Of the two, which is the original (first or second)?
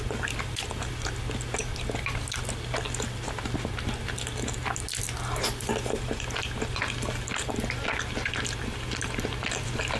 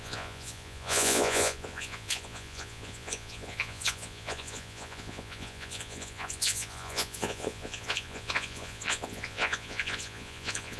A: first